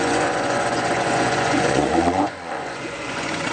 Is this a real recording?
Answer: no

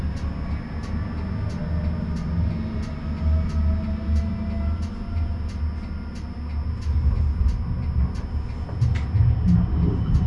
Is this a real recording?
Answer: yes